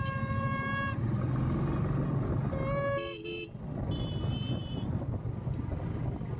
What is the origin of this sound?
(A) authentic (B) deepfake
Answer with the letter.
A